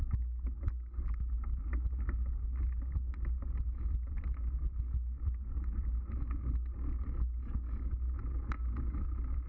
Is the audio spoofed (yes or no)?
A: no